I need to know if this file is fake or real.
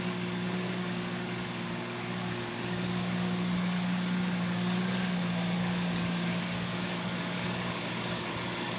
fake